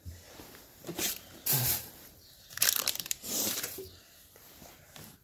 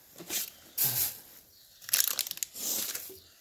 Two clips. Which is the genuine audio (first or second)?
second